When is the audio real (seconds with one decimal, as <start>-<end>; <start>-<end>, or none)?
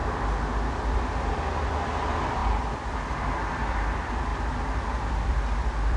0.0-0.7